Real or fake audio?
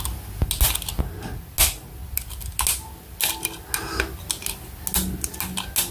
real